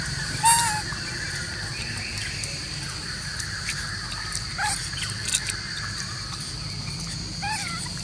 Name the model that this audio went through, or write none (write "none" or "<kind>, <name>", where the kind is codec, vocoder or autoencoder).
none